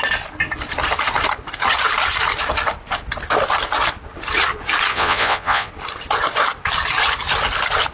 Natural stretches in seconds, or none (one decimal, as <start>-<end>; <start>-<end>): 0.0-4.9; 5.7-7.9